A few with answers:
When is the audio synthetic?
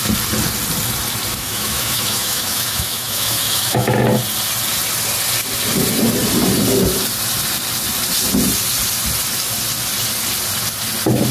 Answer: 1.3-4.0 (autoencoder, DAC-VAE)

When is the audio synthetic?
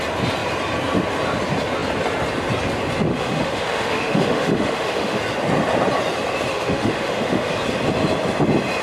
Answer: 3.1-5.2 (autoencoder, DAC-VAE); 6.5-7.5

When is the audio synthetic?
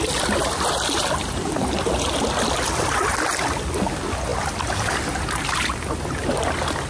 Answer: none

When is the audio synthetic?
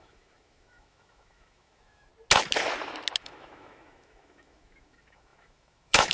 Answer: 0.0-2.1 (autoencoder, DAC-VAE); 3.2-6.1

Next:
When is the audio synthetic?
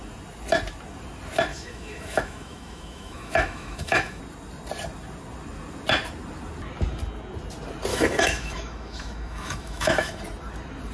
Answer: 1.5-4.2 (autoencoder, DAC-VAE); 7.9-10.2